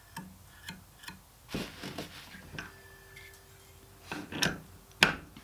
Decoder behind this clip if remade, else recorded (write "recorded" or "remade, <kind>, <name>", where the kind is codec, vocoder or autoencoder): recorded